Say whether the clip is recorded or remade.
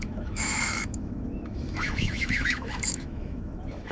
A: remade